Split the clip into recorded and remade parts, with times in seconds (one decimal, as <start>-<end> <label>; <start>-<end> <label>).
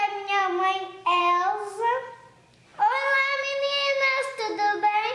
0.0-5.1 recorded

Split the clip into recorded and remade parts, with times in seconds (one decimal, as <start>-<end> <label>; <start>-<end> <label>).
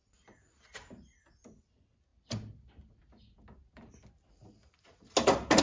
0.0-5.6 recorded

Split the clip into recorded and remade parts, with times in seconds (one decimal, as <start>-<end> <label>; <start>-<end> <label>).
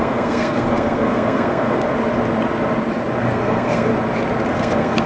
0.0-1.9 remade; 1.9-3.2 recorded; 3.2-3.9 remade; 3.9-4.5 recorded; 4.5-5.1 remade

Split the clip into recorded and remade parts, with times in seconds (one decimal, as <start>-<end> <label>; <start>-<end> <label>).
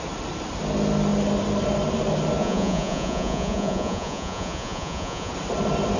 0.0-2.4 recorded; 2.4-5.3 remade; 5.3-6.0 recorded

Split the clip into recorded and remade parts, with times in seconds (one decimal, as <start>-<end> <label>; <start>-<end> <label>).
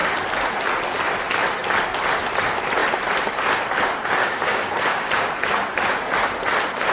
0.0-4.2 recorded; 4.2-5.1 remade; 5.1-6.9 recorded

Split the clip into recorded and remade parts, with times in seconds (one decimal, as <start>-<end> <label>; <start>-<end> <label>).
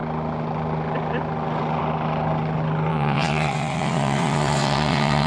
0.0-2.9 recorded; 2.9-5.3 remade